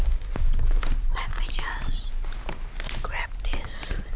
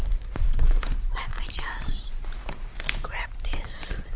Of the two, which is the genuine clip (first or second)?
first